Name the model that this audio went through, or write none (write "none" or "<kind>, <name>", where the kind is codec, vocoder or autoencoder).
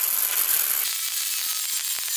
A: none